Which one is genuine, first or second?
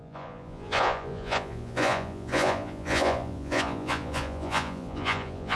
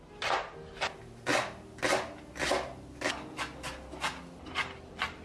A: second